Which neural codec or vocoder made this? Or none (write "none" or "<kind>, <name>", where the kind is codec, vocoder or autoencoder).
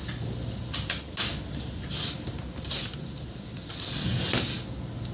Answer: none